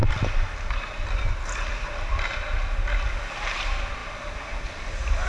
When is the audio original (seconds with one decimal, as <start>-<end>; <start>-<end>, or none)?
0.0-5.3